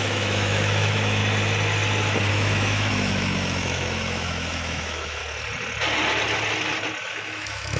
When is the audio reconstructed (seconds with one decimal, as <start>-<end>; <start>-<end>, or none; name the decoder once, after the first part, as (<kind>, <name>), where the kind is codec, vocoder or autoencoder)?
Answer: 0.0-1.2 (autoencoder, DAC-VAE); 2.3-5.2; 7.0-7.8

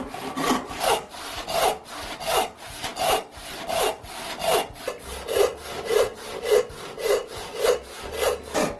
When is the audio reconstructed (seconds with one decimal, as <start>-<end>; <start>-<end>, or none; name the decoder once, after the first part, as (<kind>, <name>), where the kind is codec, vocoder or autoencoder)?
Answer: none

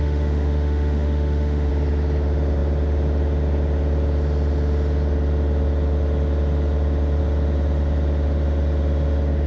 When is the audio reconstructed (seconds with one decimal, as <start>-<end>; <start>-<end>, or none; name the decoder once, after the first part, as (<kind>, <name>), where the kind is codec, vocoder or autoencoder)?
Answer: 0.0-1.7 (autoencoder, DAC-VAE)

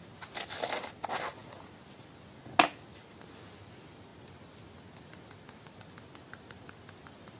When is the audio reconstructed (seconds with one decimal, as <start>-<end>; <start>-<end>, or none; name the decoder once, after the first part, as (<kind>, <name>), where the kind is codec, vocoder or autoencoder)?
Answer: none

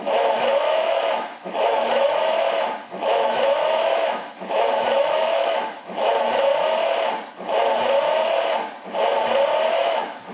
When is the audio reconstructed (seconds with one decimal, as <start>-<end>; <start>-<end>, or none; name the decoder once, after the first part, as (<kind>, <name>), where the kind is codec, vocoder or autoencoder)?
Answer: 0.0-2.2 (autoencoder, DAC-VAE); 2.8-6.5; 9.7-10.3

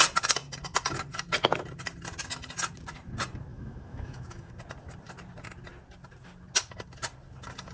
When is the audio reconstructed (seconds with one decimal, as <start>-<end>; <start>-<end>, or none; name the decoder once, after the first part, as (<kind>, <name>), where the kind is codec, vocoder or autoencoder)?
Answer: 3.5-4.5 (autoencoder, DAC-VAE)